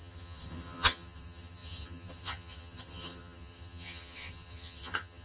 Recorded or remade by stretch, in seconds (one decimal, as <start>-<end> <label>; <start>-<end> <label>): 0.0-5.2 remade

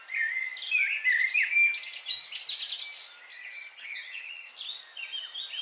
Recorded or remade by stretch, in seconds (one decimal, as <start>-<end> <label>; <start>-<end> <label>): 0.0-3.3 recorded; 3.3-4.5 remade; 4.5-5.6 recorded

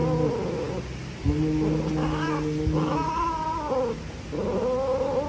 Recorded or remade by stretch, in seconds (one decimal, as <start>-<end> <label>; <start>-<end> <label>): 0.0-5.3 recorded

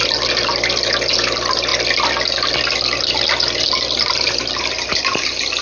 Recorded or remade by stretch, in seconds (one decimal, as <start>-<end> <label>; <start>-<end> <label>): 0.0-5.6 recorded

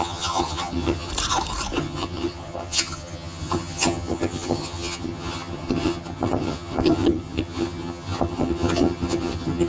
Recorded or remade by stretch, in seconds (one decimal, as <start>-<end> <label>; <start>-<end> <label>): 0.0-1.1 remade; 1.1-1.8 recorded; 1.8-9.7 remade